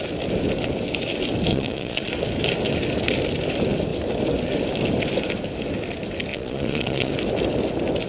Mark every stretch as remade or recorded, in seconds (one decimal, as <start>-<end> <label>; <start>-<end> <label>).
0.0-1.5 recorded; 1.5-2.1 remade; 2.1-6.3 recorded; 6.3-7.1 remade; 7.1-8.1 recorded